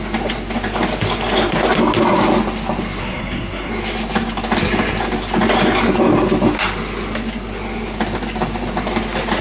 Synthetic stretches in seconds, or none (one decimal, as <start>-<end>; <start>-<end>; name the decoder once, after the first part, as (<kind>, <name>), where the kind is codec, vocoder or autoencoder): 3.0-3.7 (codec, SNAC)